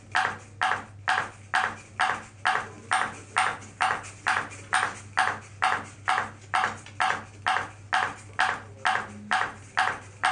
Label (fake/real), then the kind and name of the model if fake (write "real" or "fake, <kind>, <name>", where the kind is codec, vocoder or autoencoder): real